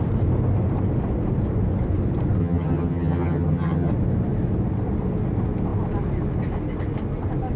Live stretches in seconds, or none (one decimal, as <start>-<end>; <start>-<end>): 0.0-2.4; 3.9-7.6